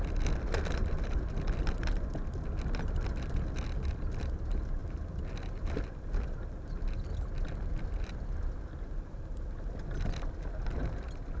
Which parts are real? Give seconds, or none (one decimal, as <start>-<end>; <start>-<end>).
0.0-11.4